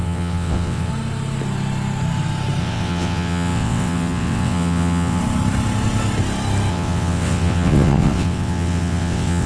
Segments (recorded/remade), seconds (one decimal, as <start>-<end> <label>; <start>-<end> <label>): 0.0-0.9 remade; 0.9-2.6 recorded; 2.6-5.2 remade; 5.2-6.7 recorded; 6.7-9.5 remade